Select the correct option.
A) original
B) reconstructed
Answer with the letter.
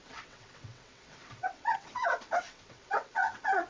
B